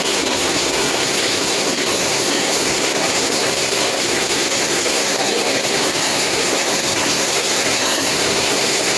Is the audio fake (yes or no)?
yes